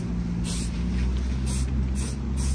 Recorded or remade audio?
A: recorded